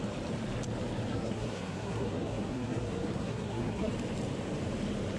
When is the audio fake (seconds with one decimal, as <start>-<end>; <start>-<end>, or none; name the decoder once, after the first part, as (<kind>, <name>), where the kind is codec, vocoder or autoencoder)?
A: 1.1-3.9 (codec, SNAC)